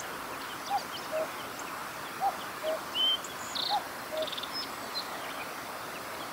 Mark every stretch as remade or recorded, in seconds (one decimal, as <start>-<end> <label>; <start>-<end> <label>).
0.0-6.3 recorded